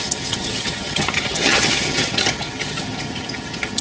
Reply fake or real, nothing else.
fake